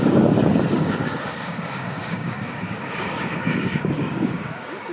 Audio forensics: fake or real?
fake